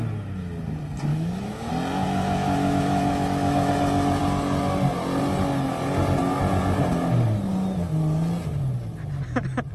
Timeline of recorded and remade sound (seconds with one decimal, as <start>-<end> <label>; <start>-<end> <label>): 0.0-1.1 recorded; 1.1-1.7 remade; 1.7-2.4 recorded; 2.4-3.7 remade; 3.7-9.7 recorded